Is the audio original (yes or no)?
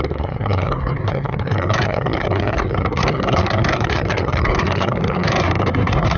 no